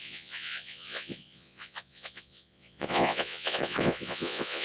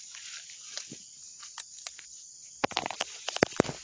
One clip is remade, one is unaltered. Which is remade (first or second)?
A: first